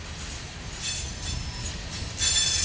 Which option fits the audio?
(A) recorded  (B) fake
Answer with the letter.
A